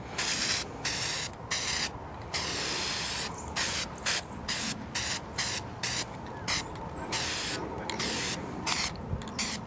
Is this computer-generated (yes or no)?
no